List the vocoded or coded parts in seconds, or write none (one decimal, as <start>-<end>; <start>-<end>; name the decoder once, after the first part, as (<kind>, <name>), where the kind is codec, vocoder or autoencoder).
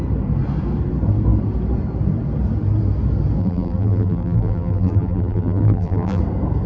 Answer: 3.4-6.2 (vocoder, BigVGAN v2)